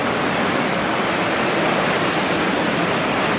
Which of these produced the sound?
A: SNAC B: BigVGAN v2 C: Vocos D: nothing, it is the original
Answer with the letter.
D